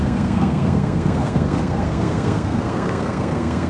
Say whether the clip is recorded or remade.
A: remade